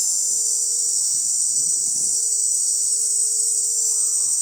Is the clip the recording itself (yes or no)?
no